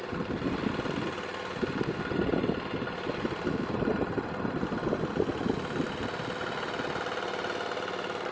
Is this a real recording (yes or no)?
yes